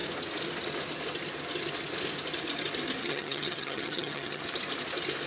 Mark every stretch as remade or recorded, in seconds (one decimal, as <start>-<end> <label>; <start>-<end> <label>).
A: 0.0-3.0 recorded; 3.0-4.4 remade; 4.4-5.3 recorded

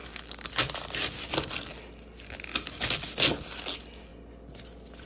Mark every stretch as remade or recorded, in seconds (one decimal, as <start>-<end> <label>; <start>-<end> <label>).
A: 0.0-5.1 recorded

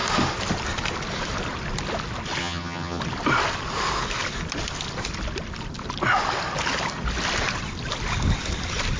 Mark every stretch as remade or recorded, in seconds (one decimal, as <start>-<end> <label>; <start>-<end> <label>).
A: 0.0-2.4 recorded; 2.4-3.0 remade; 3.0-9.0 recorded

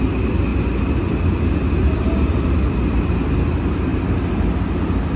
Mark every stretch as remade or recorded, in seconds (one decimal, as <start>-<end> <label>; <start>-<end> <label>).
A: 0.0-5.2 recorded

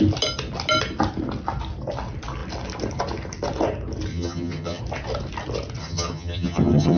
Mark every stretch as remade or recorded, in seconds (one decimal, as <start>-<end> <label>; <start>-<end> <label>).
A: 0.0-4.1 recorded; 4.1-4.8 remade; 4.8-5.8 recorded; 5.8-7.0 remade

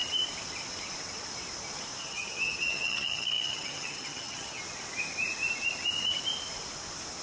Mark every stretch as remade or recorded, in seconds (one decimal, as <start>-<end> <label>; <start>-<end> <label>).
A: 0.0-2.0 recorded; 2.0-4.6 remade; 4.6-7.2 recorded

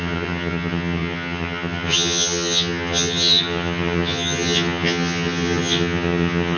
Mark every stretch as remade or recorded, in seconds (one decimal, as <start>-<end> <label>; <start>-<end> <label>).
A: 0.0-6.6 remade